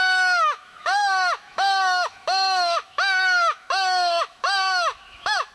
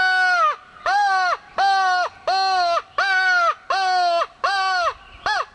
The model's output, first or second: first